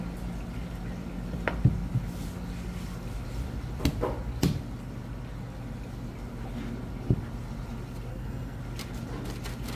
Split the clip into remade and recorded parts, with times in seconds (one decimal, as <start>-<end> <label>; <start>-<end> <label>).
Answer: 0.0-8.1 recorded; 8.1-8.6 remade; 8.6-9.8 recorded